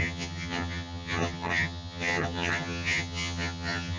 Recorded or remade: remade